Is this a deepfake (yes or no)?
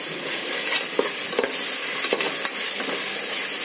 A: no